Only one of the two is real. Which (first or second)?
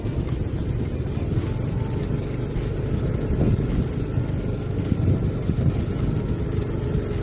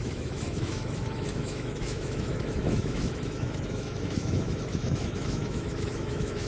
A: first